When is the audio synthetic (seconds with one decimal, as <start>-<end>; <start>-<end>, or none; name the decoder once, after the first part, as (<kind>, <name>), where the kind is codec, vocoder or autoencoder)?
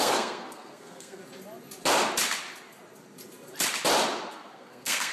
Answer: 0.0-1.2 (codec, SNAC); 4.3-5.1